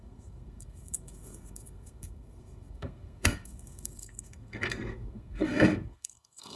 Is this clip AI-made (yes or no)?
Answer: yes